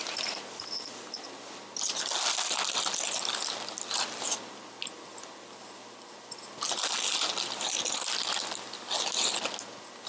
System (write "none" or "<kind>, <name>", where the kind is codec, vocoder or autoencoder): none